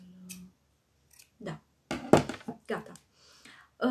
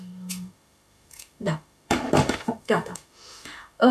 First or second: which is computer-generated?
second